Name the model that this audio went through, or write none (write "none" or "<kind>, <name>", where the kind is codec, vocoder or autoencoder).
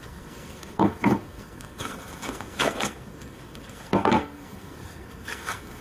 codec, SNAC